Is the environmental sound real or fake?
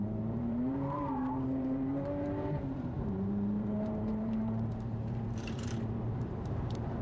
fake